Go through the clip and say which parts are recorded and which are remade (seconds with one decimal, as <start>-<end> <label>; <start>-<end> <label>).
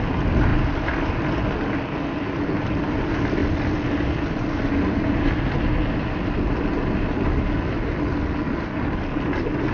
0.0-9.7 recorded